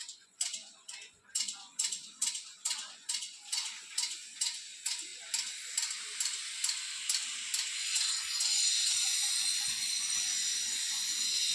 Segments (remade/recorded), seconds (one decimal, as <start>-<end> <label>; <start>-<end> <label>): 0.0-5.1 remade; 5.1-7.7 recorded; 7.7-11.5 remade